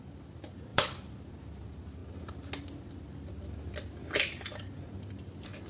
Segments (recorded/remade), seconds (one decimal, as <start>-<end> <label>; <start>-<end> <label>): 0.0-0.7 recorded; 0.7-1.3 remade; 1.3-5.7 recorded